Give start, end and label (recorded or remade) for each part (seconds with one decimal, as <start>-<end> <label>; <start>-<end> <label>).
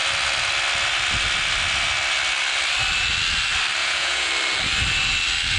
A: 0.0-3.8 recorded; 3.8-4.3 remade; 4.3-5.6 recorded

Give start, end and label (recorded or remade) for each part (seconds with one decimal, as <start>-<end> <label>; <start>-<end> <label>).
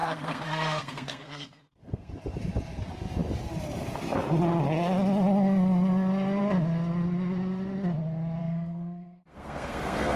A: 0.0-2.1 remade; 2.1-8.4 recorded; 8.4-10.2 remade